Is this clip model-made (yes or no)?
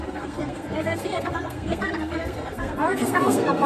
yes